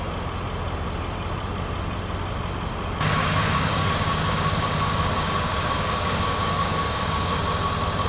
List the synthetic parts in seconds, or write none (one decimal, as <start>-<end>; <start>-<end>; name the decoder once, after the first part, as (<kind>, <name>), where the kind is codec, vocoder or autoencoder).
3.2-7.4 (codec, DAC)